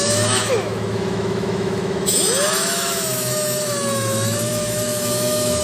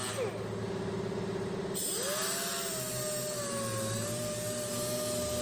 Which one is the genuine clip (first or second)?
second